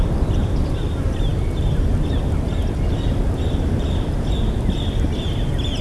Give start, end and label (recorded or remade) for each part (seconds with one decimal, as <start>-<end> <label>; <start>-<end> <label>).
0.0-5.8 recorded